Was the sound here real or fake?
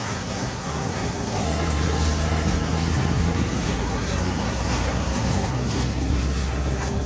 fake